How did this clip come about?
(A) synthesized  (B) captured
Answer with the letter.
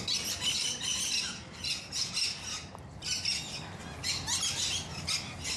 B